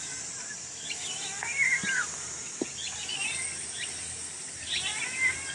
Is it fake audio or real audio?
real